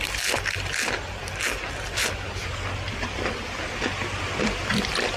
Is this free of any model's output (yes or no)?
no